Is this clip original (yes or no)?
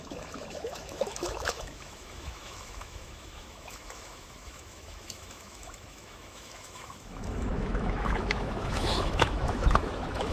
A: no